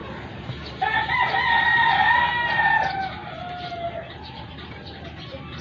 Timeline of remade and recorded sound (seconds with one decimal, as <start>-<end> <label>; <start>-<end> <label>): 0.0-3.2 recorded; 3.2-5.0 remade; 5.0-5.6 recorded